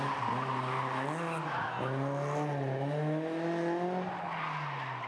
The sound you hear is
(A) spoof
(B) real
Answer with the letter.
B